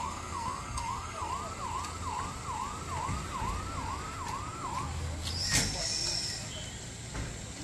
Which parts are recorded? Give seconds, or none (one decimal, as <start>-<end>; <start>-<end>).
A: 1.3-7.6